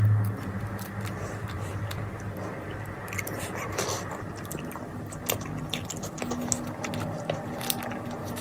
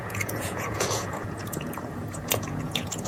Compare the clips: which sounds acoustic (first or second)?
first